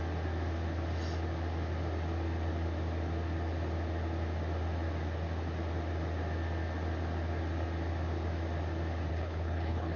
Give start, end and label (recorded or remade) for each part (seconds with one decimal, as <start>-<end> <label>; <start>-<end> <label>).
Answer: 0.0-9.1 recorded; 9.1-10.0 remade

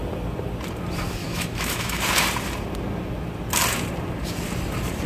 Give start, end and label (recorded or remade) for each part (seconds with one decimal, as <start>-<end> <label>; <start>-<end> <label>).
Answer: 0.0-1.2 recorded; 1.2-2.0 remade; 2.0-5.1 recorded